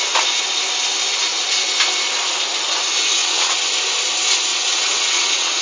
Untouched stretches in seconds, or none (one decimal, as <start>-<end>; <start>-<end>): 0.0-3.2; 3.7-4.5